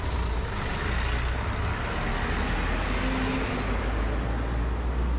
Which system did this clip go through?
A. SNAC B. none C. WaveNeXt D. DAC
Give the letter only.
B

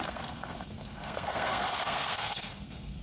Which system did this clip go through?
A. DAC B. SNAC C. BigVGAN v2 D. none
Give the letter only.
B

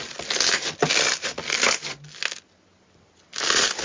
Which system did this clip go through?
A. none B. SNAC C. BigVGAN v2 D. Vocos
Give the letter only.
A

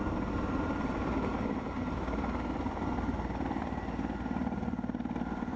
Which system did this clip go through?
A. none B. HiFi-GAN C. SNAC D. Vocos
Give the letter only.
A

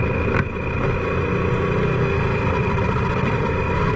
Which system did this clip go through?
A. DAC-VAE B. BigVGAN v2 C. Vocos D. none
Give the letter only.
D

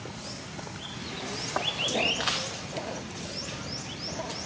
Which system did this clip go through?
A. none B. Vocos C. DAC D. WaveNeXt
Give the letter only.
A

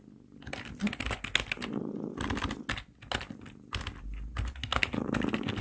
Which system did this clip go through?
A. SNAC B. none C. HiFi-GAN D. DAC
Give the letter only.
B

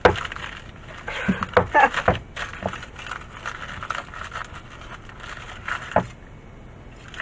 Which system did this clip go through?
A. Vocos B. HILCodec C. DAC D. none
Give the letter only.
D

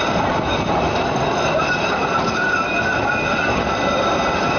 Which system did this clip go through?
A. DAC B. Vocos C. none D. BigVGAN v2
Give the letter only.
C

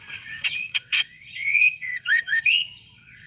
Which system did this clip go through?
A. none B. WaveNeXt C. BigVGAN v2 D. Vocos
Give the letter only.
B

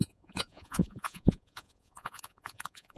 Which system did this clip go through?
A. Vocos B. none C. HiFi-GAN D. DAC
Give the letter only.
A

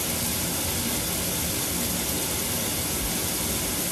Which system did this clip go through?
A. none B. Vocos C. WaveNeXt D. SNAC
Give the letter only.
A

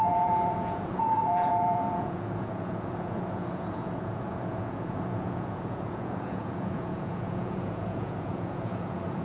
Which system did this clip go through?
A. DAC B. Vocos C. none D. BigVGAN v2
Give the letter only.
B